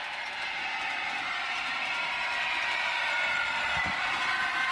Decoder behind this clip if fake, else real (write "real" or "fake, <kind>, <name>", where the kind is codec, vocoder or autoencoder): real